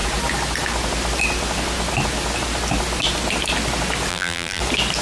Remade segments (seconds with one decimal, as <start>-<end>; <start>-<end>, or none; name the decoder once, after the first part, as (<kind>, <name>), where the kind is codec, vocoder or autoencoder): 4.1-4.6 (vocoder, BigVGAN v2)